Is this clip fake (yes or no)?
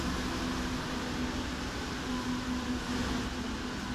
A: no